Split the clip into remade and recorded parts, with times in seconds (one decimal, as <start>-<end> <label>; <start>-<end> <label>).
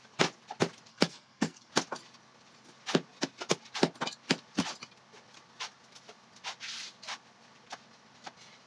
0.0-0.9 recorded; 0.9-1.7 remade; 1.7-8.7 recorded